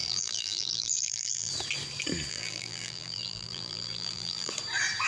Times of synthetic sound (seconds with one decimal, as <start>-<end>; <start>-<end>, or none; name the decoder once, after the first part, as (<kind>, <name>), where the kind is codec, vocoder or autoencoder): 0.0-1.5 (vocoder, BigVGAN v2); 2.3-4.5